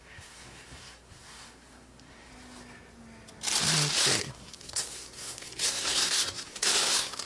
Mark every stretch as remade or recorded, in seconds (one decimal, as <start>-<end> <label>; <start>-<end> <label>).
0.0-2.3 remade; 2.3-4.2 recorded; 4.2-7.3 remade